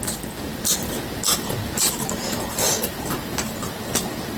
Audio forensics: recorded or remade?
recorded